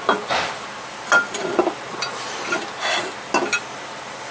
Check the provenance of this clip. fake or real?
real